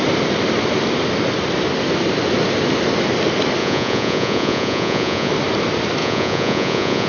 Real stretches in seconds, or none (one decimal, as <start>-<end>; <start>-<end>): 0.0-3.6; 5.3-6.0